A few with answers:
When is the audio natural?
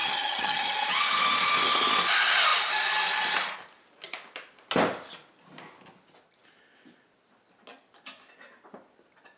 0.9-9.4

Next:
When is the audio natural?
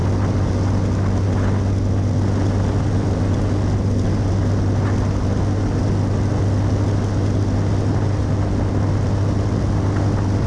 0.0-10.5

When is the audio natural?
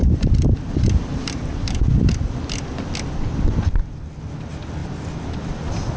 1.5-4.8